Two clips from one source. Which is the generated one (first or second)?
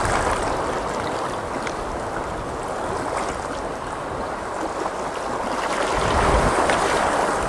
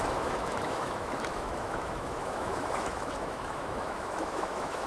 second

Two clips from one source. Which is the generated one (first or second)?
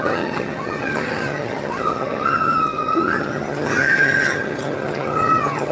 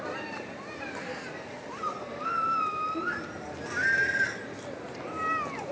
first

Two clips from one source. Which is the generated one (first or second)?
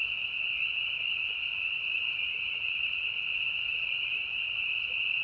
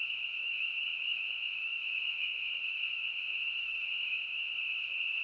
second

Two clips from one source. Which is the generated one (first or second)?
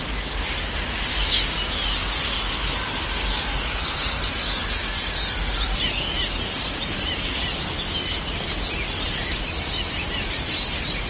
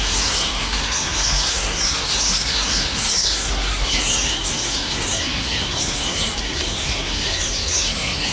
second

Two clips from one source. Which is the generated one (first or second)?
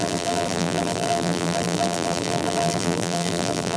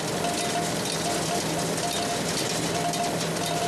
first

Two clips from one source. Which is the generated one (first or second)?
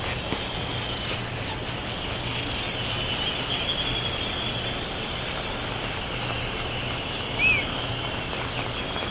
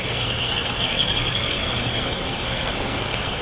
second